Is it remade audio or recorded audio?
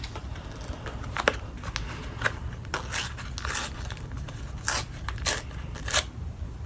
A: recorded